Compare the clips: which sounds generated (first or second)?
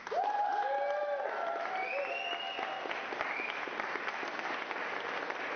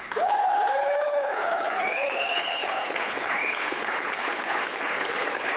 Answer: second